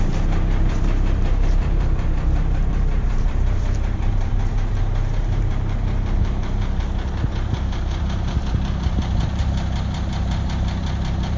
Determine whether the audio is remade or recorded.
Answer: remade